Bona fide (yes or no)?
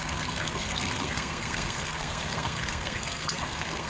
no